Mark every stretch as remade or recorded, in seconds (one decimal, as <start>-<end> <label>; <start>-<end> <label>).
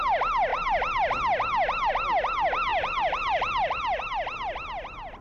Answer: 0.0-2.7 recorded; 2.7-4.0 remade; 4.0-5.2 recorded